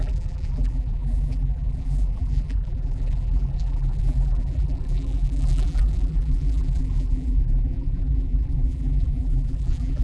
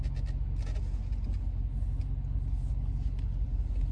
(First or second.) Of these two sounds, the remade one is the first